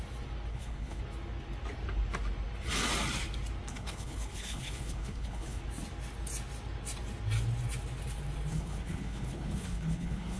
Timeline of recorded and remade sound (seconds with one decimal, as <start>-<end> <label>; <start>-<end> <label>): 0.0-0.5 recorded; 0.5-1.0 remade; 1.0-3.7 recorded; 3.7-5.6 remade; 5.6-8.5 recorded; 8.5-10.4 remade